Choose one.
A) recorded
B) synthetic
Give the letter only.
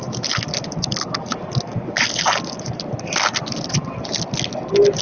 A